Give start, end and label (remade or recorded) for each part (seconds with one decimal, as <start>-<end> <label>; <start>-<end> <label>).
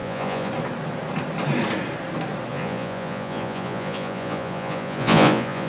0.0-0.5 remade; 0.5-2.5 recorded; 2.5-5.7 remade